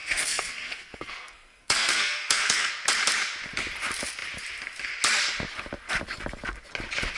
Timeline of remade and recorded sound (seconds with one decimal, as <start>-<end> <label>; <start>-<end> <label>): 0.0-2.7 remade; 2.7-7.2 recorded